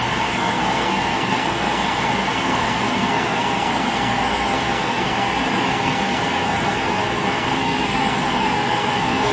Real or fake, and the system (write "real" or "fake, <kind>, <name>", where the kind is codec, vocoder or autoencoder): fake, codec, SNAC